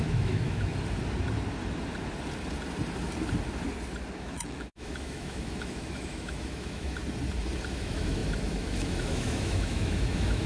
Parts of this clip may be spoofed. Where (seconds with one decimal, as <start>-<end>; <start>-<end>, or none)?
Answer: 0.0-0.7; 4.1-7.0; 7.7-10.5